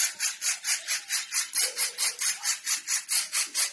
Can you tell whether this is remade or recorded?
recorded